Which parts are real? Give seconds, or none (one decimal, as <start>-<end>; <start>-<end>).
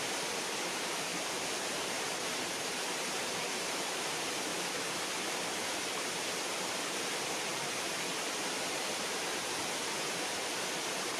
4.5-5.5